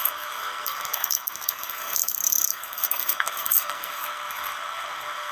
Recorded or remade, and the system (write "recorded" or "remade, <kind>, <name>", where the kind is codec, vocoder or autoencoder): remade, codec, SNAC